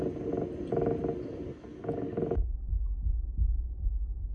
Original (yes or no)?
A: yes